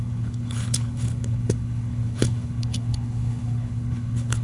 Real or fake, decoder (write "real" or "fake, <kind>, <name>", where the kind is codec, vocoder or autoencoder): fake, codec, HILCodec